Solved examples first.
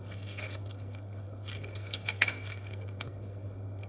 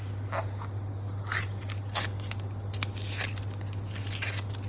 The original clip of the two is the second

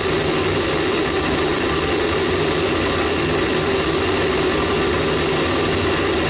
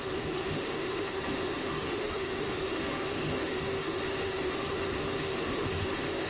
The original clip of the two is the first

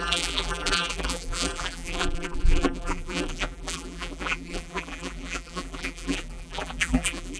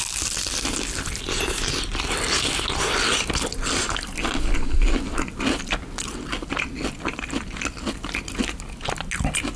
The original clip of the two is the second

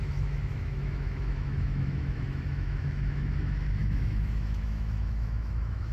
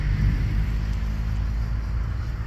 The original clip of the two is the second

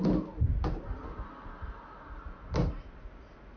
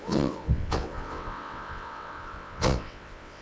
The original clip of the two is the first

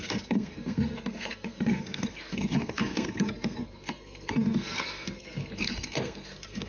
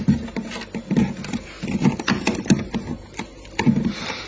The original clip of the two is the second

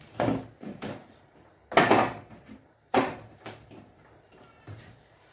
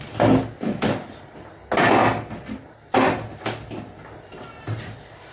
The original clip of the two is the second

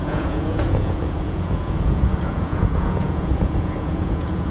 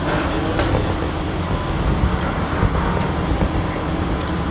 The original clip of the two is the second